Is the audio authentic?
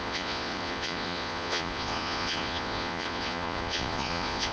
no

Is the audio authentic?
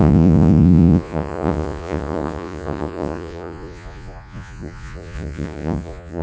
no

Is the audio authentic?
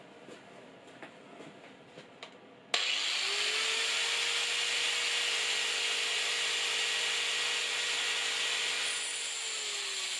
yes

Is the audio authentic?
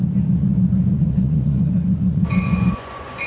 no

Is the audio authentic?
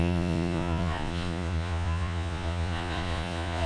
no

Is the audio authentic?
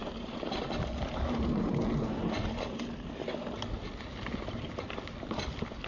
yes